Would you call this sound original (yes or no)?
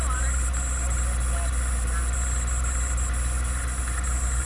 yes